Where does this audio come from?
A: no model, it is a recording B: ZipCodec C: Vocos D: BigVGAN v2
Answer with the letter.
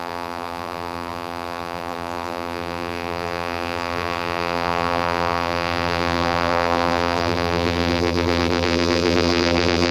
D